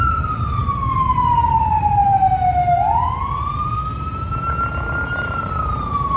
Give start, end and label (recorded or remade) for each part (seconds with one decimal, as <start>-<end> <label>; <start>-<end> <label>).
0.0-6.2 recorded